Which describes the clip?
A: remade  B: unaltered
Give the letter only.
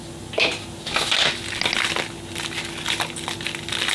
B